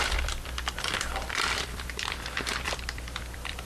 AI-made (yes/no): yes